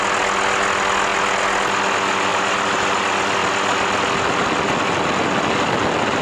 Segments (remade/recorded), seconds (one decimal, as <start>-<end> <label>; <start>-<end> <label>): 0.0-2.3 recorded; 2.3-3.0 remade; 3.0-6.2 recorded